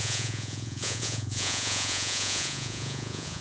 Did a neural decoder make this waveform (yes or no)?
yes